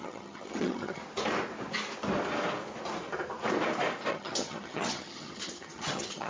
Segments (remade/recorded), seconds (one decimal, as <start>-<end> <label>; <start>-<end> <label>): 0.0-1.0 remade; 1.0-4.1 recorded; 4.1-6.3 remade